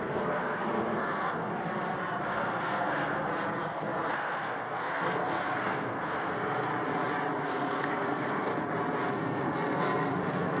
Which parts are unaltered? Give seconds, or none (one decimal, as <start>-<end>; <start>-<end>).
1.5-2.2; 3.3-4.1; 6.7-7.4; 8.5-9.1